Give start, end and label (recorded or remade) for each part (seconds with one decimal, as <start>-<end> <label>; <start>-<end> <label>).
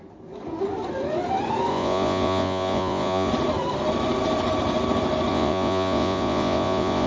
0.0-1.7 recorded; 1.7-3.3 remade; 3.3-5.3 recorded; 5.3-7.1 remade